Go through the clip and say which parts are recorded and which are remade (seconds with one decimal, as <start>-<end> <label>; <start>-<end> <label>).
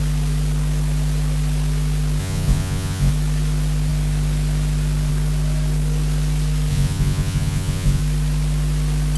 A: 0.0-2.2 recorded; 2.2-3.1 remade; 3.1-6.7 recorded; 6.7-8.0 remade; 8.0-9.2 recorded